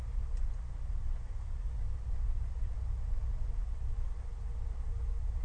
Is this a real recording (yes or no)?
yes